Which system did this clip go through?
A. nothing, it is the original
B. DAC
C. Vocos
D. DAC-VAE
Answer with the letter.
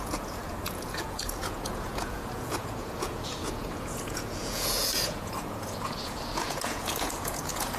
C